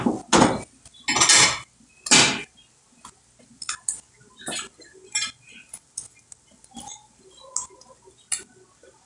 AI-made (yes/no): no